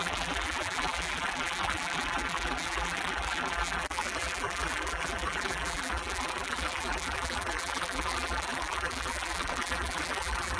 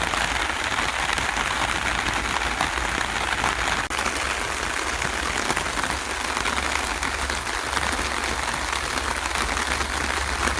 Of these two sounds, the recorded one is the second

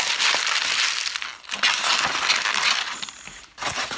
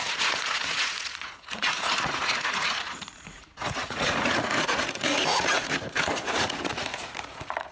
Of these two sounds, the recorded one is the first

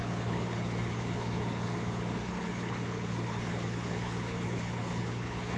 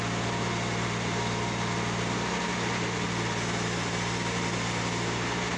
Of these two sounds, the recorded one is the second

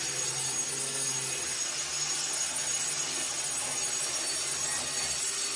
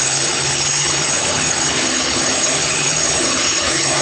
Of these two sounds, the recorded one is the first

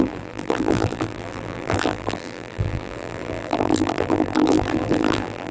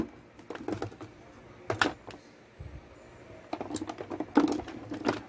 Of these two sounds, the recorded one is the second